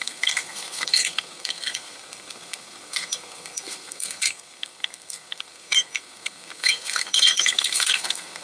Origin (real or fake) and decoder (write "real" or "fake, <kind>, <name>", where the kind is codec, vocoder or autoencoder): fake, codec, SNAC